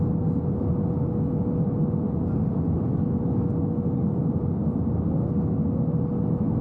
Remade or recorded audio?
recorded